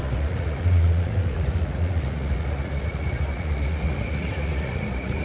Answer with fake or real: fake